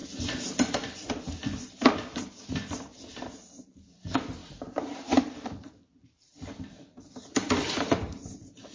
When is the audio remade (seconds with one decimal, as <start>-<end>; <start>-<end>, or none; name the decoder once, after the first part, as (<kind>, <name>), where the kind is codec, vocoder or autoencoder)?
0.0-8.7 (vocoder, BigVGAN v2)